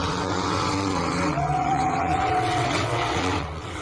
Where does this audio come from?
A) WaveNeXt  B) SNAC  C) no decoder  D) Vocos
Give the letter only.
A